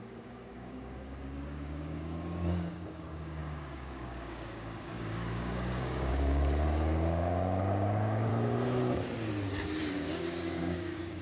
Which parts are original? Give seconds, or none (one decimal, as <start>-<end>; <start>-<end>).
8.3-9.8